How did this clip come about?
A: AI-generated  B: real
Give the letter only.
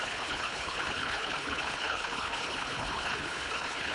A